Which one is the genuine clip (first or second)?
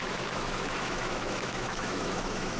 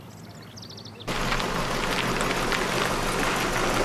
second